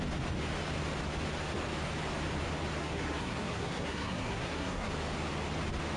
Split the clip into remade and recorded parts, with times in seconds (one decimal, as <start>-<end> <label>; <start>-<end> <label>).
0.0-2.8 recorded; 2.8-4.9 remade; 4.9-6.0 recorded